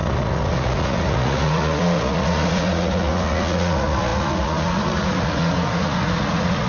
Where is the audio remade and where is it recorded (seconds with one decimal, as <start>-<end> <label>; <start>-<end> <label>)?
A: 0.0-6.7 remade